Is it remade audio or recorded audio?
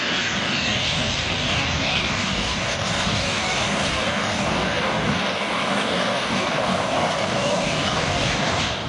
remade